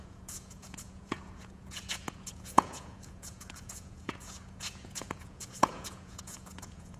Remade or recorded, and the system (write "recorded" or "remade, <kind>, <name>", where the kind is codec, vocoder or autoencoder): remade, vocoder, Vocos